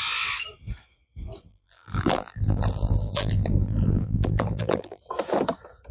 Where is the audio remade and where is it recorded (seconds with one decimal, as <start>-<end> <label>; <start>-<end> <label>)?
0.0-1.5 recorded; 1.5-5.0 remade; 5.0-5.9 recorded